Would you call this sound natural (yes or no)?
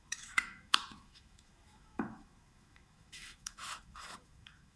no